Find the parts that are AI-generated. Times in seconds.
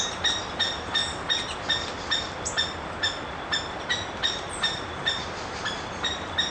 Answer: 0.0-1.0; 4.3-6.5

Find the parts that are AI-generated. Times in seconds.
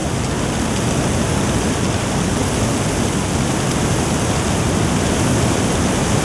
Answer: none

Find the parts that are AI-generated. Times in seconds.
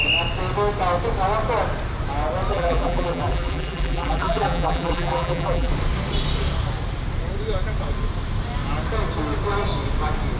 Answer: 2.5-5.7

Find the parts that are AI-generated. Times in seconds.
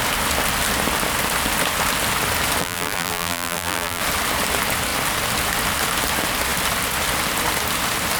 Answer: 2.6-4.0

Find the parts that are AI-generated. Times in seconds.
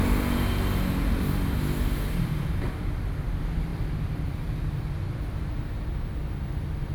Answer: none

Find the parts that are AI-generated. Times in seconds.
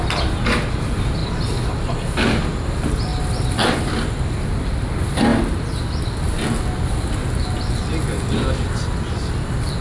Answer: none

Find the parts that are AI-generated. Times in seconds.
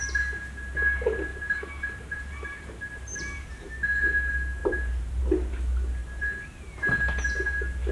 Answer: 1.3-3.7; 4.6-5.2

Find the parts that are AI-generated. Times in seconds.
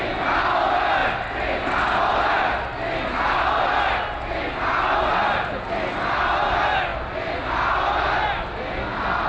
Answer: none